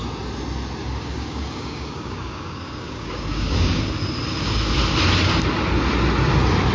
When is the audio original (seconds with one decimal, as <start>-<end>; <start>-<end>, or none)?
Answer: 0.0-0.8; 3.8-6.7